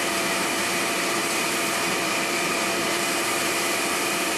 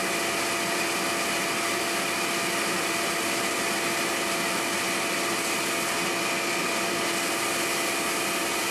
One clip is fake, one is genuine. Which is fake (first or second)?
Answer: first